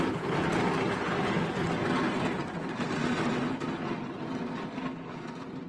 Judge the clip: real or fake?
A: real